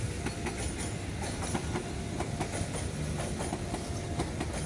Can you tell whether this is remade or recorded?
recorded